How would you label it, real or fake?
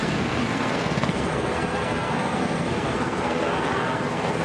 fake